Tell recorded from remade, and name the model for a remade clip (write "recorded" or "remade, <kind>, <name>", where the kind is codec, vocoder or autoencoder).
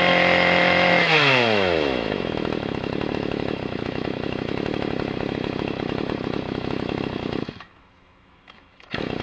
remade, autoencoder, DAC-VAE